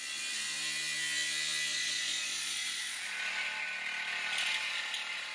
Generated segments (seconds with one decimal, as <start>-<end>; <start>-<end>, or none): 1.7-3.2